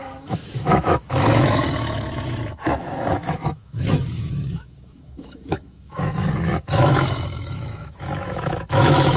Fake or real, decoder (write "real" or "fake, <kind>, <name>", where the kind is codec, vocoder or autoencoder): fake, autoencoder, DAC-VAE